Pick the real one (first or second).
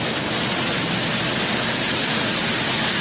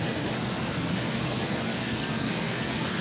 first